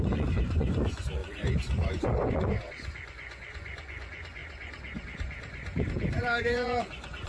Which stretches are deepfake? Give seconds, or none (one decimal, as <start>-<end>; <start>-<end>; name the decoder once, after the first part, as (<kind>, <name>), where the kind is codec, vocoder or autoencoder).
0.0-7.3 (vocoder, Vocos)